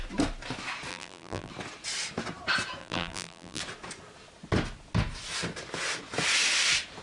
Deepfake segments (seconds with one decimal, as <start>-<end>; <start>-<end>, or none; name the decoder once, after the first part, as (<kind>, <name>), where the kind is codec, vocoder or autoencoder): 0.9-1.5 (vocoder, BigVGAN v2); 2.8-3.6